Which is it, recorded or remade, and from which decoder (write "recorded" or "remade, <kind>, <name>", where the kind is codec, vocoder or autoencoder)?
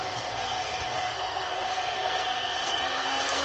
remade, codec, SNAC